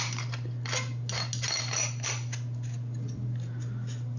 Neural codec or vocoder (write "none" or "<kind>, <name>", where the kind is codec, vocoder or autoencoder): none